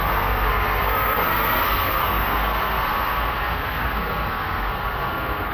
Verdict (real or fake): fake